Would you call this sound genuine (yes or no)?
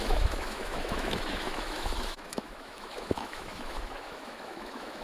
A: no